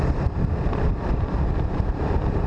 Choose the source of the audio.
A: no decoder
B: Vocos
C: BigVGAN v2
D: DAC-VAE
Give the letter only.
C